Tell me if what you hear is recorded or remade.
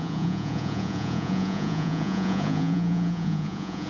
remade